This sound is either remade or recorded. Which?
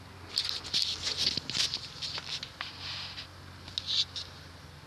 recorded